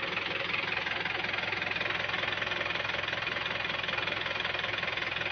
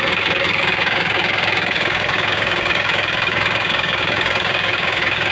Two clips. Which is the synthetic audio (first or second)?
second